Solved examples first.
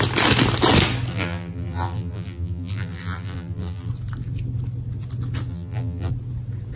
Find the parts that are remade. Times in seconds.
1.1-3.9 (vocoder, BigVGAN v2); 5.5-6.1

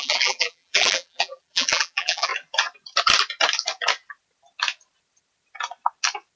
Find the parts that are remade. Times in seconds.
0.0-2.3 (vocoder, BigVGAN v2)

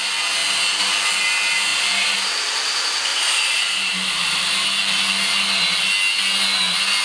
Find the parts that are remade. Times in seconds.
1.7-2.4 (vocoder, BigVGAN v2); 3.1-4.8